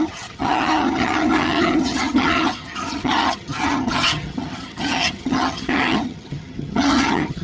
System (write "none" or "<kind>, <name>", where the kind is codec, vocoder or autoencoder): vocoder, HiFi-GAN